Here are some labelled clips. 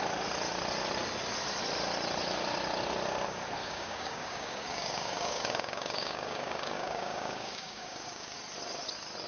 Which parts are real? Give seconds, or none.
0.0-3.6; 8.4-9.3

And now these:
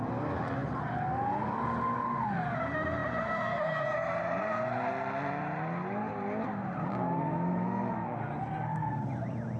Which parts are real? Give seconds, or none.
0.0-9.6

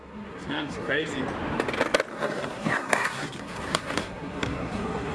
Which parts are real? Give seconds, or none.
1.1-2.1